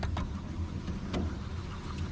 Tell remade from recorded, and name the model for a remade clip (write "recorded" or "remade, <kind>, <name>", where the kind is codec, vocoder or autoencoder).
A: recorded